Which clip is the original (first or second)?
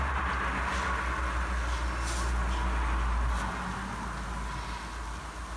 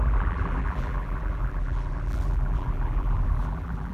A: first